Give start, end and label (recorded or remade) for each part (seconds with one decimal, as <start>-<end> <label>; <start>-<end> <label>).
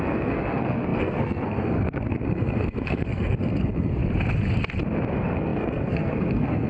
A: 0.0-4.0 remade; 4.0-5.1 recorded; 5.1-6.7 remade